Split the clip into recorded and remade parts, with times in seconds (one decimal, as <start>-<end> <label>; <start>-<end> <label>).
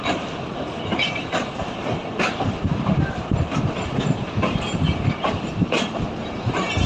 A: 0.0-6.9 remade